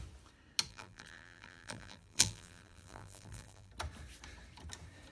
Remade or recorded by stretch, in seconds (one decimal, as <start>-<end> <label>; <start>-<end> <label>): 0.0-0.7 recorded; 0.7-3.7 remade; 3.7-5.1 recorded